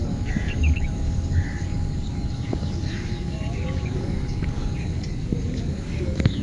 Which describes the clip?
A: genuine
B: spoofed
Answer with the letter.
B